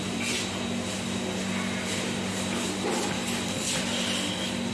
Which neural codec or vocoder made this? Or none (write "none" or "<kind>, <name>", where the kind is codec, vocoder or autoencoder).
vocoder, BigVGAN v2